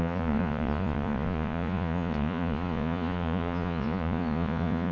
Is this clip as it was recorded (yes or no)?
no